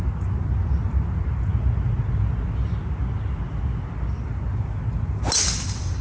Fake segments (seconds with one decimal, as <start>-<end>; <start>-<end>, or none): none